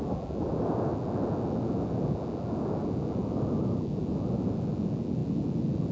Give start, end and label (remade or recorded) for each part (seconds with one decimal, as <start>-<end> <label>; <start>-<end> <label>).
0.0-5.9 recorded